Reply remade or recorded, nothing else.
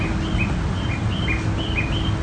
recorded